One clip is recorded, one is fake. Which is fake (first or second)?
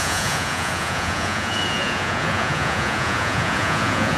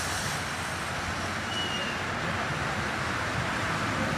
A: first